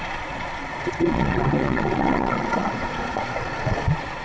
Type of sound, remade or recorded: remade